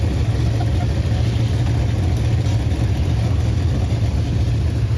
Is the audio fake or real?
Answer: real